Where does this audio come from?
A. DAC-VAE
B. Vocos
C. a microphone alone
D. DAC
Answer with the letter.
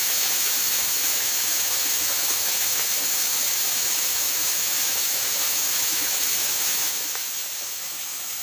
A